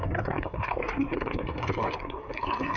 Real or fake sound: fake